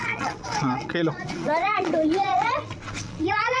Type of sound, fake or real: fake